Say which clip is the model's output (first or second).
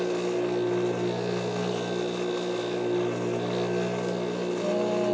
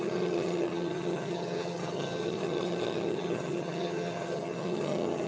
second